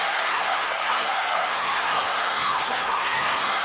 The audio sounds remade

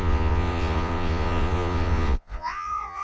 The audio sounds remade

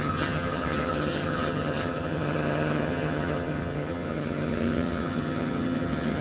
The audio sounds remade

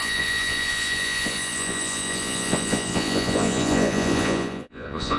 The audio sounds remade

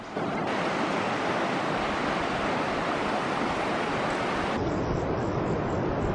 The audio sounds recorded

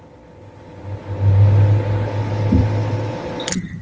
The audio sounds recorded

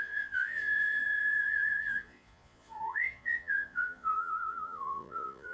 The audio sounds remade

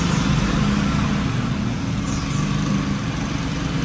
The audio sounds recorded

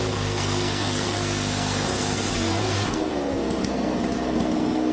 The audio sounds remade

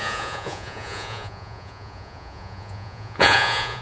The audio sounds remade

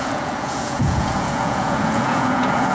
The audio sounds remade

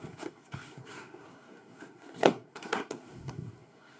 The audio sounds remade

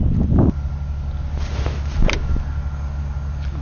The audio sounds recorded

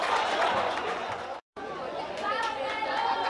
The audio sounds remade